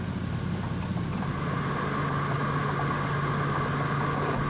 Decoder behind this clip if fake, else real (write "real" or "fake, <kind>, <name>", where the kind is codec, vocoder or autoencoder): real